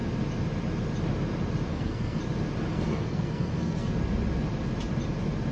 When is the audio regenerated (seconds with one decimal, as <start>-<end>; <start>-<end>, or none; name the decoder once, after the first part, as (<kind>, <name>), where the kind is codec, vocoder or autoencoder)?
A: 1.7-2.2 (codec, SNAC); 2.7-3.9